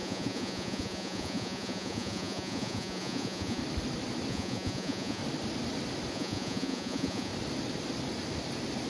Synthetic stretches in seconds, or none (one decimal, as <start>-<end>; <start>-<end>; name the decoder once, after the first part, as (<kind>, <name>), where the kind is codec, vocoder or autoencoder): 0.0-3.6 (vocoder, Vocos); 4.3-5.2; 6.1-7.3